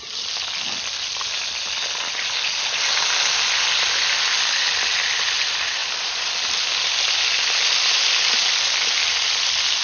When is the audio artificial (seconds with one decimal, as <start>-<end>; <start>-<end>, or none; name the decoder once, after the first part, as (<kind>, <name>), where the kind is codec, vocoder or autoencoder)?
none